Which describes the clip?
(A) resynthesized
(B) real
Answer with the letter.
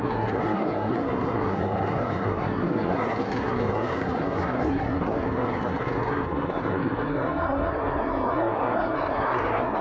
A